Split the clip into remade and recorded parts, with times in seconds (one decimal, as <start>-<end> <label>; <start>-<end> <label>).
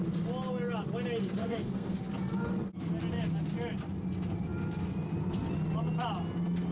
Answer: 0.0-1.4 recorded; 1.4-2.0 remade; 2.0-6.7 recorded